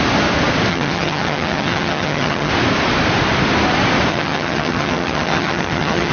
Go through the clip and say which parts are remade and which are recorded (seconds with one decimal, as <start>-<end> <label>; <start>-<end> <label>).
0.0-0.7 recorded; 0.7-2.5 remade; 2.5-4.1 recorded; 4.1-6.1 remade

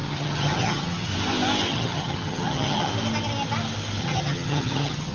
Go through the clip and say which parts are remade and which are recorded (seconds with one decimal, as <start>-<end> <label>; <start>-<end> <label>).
0.0-1.1 remade; 1.1-1.7 recorded; 1.7-2.9 remade; 2.9-4.0 recorded; 4.0-5.1 remade

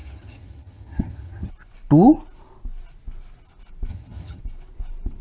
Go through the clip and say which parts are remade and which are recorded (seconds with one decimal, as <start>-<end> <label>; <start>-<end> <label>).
0.0-1.5 remade; 1.5-3.9 recorded; 3.9-4.4 remade; 4.4-5.2 recorded